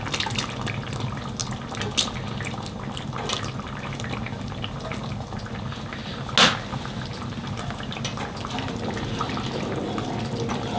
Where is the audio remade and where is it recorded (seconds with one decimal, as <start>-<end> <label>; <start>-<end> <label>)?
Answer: 0.0-10.8 recorded